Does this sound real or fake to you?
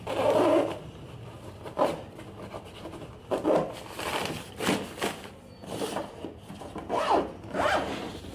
real